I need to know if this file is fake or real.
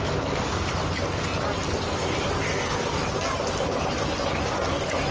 real